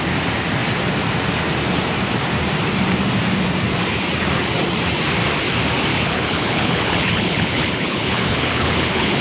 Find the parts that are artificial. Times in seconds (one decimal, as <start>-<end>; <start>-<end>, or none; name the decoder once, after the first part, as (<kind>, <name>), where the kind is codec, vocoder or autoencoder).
5.9-9.2 (codec, HILCodec)